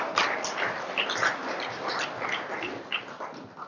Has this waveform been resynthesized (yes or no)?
no